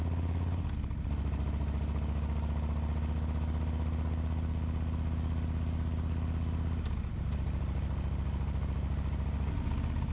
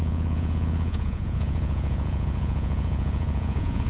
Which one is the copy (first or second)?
second